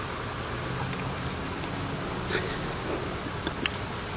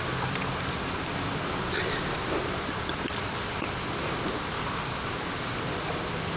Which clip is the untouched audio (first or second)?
first